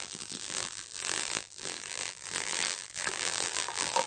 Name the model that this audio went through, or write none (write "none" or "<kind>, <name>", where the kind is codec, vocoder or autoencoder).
vocoder, BigVGAN v2